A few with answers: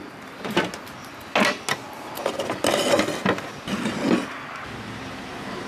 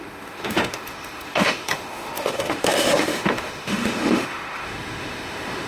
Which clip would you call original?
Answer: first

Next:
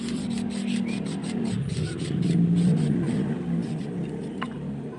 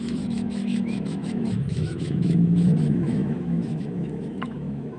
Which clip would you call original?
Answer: first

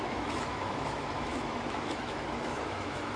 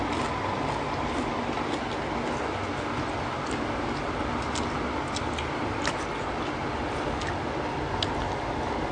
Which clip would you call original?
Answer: second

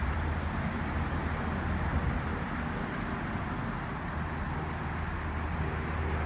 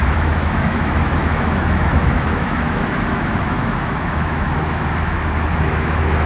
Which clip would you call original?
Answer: first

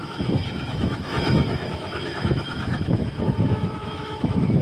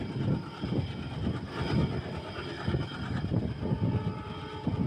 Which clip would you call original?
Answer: second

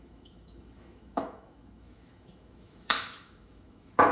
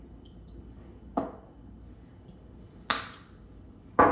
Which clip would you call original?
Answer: second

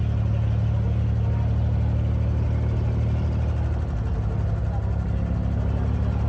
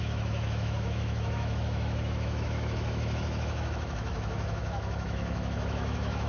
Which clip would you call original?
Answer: first